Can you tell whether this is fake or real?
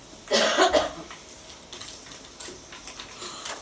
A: real